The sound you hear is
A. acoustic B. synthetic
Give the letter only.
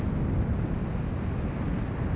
A